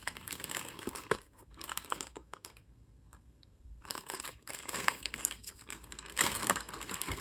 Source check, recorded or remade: remade